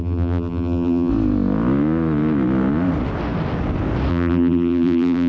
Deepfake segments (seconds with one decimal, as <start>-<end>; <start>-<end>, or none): 0.0-1.1; 4.1-5.3